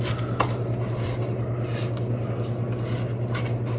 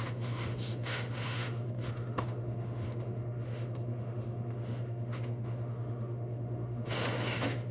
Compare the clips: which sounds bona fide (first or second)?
first